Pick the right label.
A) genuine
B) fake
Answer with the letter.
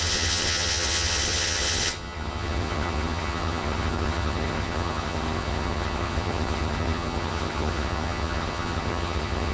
B